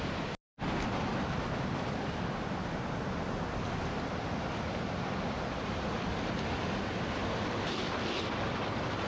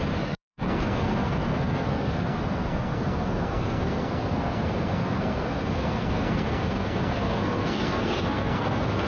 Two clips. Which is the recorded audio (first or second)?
first